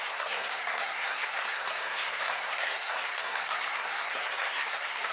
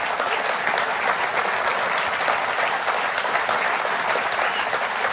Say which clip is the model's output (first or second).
first